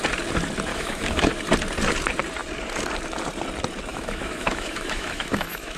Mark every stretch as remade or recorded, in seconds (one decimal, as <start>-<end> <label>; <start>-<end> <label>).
0.0-0.7 recorded; 0.7-1.3 remade; 1.3-3.9 recorded; 3.9-5.8 remade